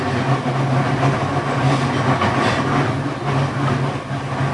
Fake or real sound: real